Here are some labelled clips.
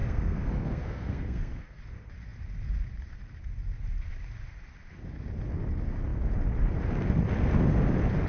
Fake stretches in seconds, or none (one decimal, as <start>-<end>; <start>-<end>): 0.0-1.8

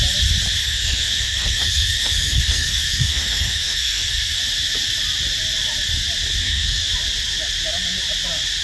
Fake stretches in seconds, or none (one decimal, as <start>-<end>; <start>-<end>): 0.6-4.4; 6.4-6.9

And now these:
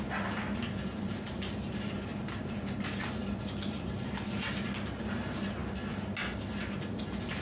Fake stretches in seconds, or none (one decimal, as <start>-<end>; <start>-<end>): none

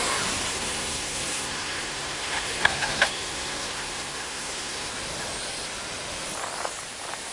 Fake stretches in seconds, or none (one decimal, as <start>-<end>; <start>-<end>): 0.5-4.9

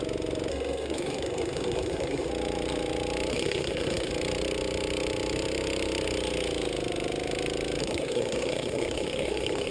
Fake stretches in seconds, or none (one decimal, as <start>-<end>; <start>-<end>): 0.5-2.3; 3.3-4.1; 7.8-9.7

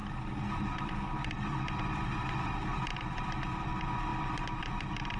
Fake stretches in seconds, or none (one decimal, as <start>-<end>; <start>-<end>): none

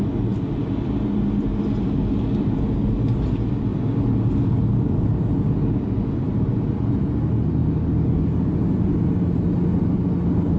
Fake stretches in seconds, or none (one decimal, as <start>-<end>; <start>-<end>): none